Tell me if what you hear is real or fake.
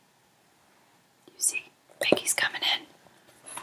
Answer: real